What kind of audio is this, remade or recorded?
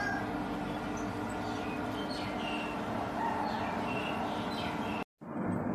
recorded